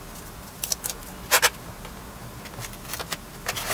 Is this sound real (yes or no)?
yes